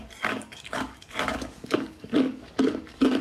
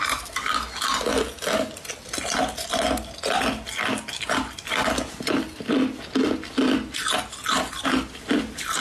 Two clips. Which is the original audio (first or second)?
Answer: second